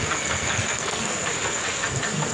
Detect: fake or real fake